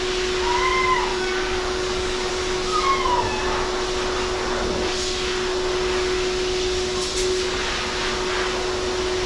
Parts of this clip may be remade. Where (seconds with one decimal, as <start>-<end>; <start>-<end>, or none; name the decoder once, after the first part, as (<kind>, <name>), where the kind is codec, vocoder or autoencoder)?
1.1-2.3 (codec, DAC)